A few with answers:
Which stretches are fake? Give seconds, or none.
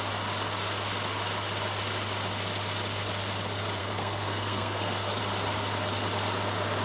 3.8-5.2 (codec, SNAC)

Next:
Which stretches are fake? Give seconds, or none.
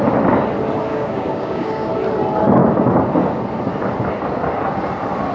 0.9-1.9 (codec, DAC)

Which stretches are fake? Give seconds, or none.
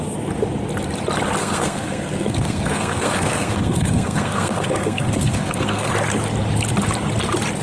1.4-5.9 (codec, SNAC)